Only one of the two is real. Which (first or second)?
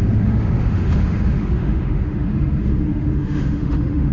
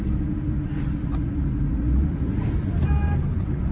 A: second